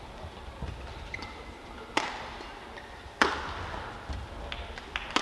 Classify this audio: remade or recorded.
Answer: recorded